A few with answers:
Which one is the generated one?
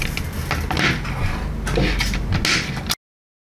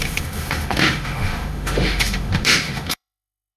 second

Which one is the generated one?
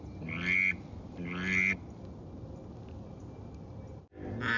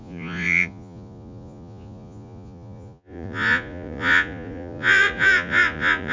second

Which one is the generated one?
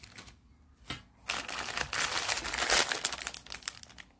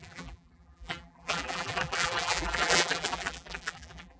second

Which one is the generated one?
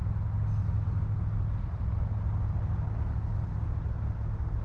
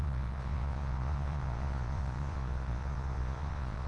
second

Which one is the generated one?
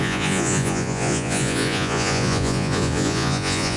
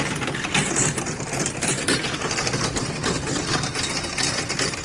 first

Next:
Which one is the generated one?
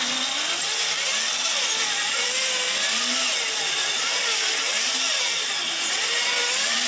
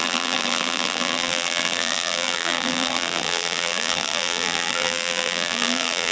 second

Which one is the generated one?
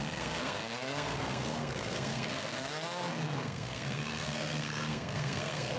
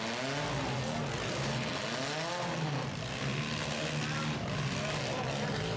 first